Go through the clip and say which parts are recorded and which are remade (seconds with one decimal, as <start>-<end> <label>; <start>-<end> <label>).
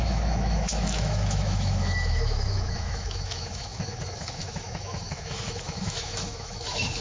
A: 0.0-7.0 remade